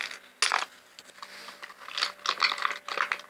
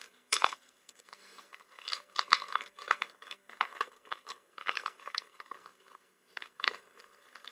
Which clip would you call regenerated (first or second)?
second